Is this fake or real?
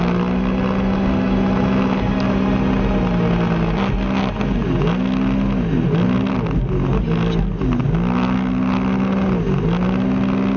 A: real